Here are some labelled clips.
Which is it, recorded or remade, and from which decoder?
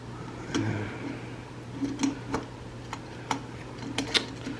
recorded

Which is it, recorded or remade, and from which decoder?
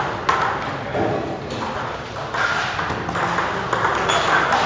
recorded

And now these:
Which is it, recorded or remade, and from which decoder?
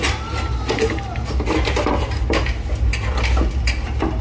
recorded